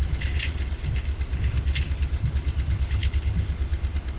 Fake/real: real